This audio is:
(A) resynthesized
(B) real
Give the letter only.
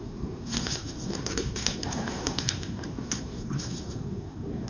A